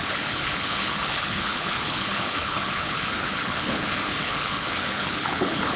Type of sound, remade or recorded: remade